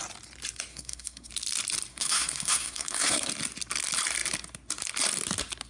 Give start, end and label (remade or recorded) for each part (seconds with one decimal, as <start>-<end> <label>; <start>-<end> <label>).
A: 0.0-0.7 recorded; 0.7-1.3 remade; 1.3-1.9 recorded; 1.9-3.3 remade; 3.3-5.7 recorded